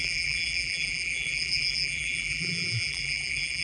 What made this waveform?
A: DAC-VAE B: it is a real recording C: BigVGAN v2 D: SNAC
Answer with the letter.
C